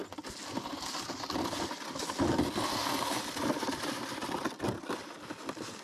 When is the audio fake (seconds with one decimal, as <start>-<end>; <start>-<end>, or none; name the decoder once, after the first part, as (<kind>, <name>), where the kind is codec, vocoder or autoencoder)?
2.8-3.9 (vocoder, BigVGAN v2)